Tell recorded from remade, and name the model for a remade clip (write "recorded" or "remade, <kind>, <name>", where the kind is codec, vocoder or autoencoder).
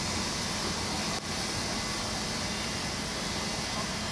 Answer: recorded